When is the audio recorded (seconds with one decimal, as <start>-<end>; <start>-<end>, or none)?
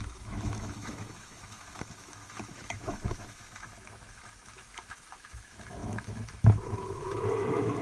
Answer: none